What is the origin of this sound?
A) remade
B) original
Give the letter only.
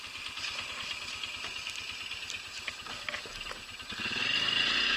B